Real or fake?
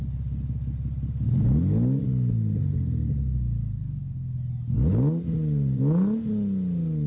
real